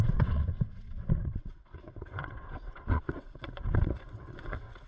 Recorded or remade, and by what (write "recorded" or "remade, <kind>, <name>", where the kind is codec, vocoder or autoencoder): remade, vocoder, WaveNeXt